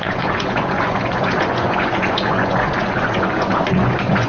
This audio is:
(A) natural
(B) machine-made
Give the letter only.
B